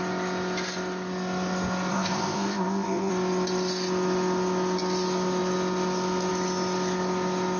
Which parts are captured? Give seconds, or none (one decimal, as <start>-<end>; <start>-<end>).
0.0-1.9; 3.1-7.6